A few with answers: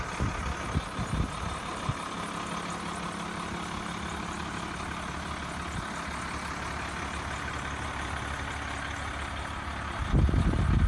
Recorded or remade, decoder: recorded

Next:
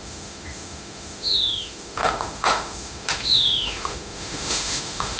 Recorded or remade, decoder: remade, autoencoder, DAC-VAE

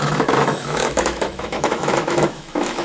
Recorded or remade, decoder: remade, autoencoder, DAC-VAE